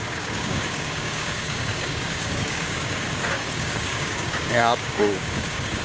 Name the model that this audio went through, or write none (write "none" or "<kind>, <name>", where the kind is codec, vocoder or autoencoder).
codec, DAC